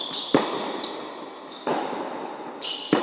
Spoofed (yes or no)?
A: no